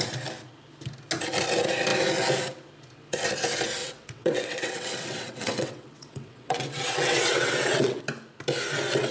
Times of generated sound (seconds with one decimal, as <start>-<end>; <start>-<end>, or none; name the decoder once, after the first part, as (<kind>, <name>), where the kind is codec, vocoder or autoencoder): 3.8-8.0 (vocoder, WaveNeXt)